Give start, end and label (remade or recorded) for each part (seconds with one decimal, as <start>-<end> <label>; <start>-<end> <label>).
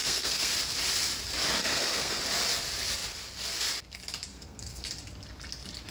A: 0.0-0.5 remade; 0.5-1.6 recorded; 1.6-2.2 remade; 2.2-4.3 recorded; 4.3-4.9 remade; 4.9-5.9 recorded